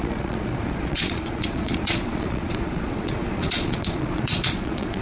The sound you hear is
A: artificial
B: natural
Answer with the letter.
A